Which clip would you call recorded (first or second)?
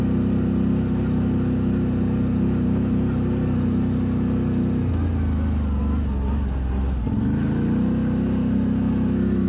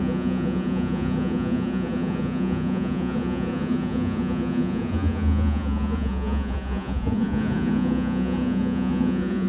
first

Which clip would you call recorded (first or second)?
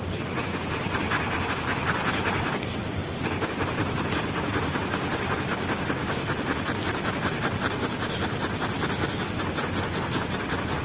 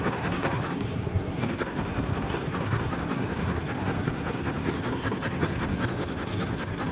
first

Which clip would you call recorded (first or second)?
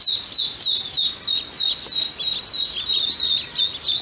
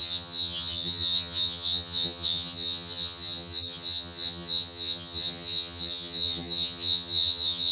first